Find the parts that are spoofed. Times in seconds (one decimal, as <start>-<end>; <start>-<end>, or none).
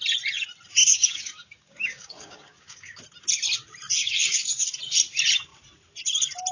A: 0.8-3.0; 4.0-4.7